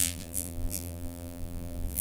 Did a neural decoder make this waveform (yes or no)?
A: yes